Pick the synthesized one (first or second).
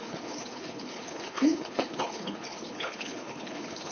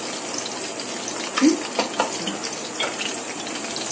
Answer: first